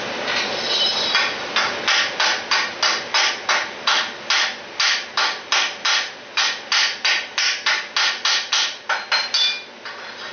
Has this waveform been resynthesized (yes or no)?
no